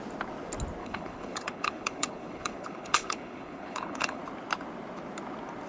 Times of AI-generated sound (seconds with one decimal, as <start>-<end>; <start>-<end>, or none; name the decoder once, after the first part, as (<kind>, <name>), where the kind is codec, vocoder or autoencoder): 0.8-4.2 (codec, HILCodec)